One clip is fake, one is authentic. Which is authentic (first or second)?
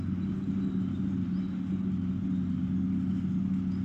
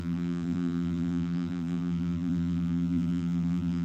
first